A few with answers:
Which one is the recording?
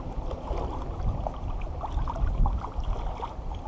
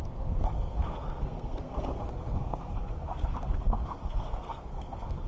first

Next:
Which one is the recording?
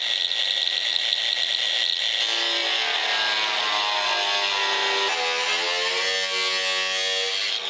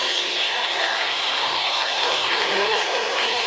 first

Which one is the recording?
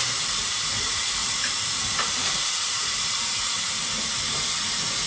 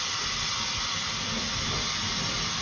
second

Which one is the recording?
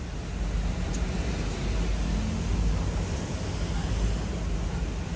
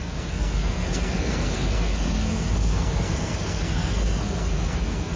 first